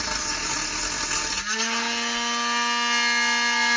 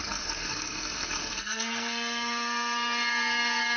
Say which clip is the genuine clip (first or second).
first